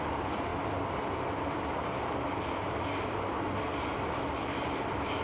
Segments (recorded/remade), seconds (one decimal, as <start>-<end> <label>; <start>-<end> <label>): 0.0-5.2 recorded